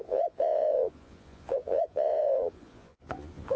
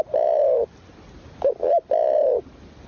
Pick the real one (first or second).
second